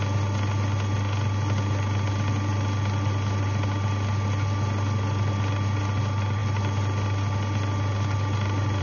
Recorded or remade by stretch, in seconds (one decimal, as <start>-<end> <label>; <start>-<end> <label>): 0.0-8.8 recorded